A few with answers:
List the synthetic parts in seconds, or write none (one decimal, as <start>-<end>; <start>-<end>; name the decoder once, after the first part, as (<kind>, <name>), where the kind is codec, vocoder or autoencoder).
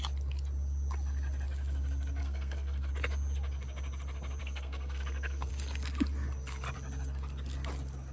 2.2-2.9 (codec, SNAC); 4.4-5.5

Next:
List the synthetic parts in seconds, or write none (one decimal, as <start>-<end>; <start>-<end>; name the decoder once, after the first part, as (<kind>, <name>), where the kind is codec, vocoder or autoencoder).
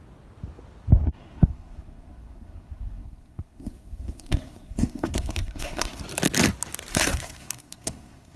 1.0-6.0 (codec, SNAC); 6.9-8.4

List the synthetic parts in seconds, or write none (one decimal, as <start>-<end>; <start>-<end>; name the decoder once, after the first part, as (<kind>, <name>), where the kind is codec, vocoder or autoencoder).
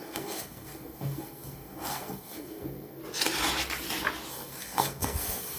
0.0-3.0 (codec, SNAC); 4.3-5.6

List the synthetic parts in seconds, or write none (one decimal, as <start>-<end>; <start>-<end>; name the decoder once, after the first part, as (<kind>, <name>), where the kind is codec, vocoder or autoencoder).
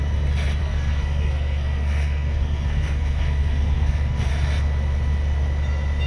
0.6-4.3 (codec, SNAC)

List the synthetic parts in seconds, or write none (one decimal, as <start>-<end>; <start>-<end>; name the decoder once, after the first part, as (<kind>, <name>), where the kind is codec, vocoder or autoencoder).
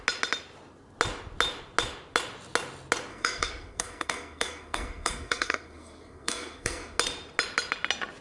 3.1-7.0 (codec, SNAC)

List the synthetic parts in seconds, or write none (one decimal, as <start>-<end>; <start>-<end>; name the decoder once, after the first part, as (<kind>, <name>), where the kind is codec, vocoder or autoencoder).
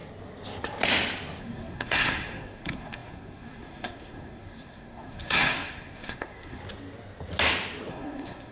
1.4-6.6 (codec, SNAC); 7.9-8.5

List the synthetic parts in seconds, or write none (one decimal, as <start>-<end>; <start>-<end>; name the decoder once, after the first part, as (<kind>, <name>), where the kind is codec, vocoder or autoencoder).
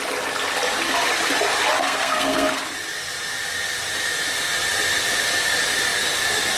1.8-2.6 (codec, SNAC)